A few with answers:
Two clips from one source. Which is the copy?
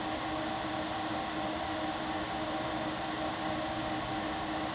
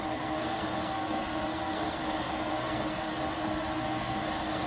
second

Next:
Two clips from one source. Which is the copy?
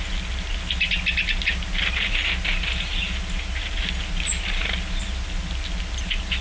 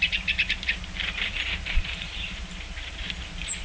second